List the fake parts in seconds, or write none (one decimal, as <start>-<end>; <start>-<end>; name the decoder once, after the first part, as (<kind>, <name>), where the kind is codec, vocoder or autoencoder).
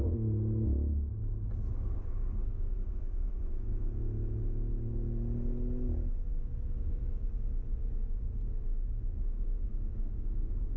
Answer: 2.5-3.3 (codec, DAC)